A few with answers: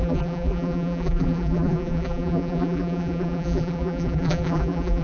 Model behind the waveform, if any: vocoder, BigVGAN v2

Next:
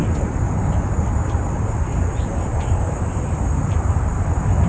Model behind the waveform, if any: vocoder, BigVGAN v2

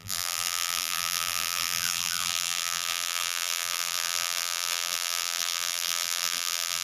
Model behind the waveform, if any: vocoder, BigVGAN v2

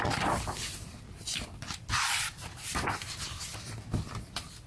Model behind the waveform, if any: vocoder, BigVGAN v2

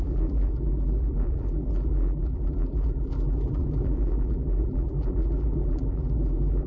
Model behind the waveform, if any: vocoder, BigVGAN v2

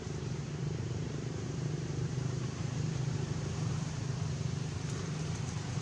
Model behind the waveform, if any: vocoder, BigVGAN v2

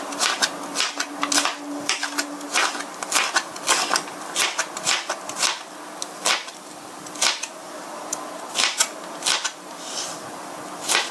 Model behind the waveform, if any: none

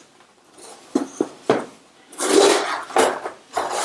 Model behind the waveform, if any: none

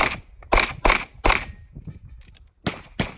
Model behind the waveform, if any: none